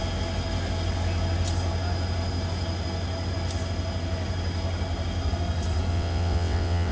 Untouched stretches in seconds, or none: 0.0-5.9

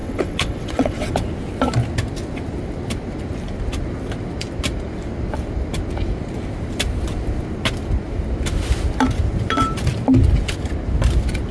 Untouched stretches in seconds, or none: 1.1-11.5